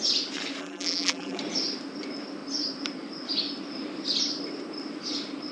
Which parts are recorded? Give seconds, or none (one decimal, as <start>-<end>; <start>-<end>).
0.0-0.6; 1.4-5.5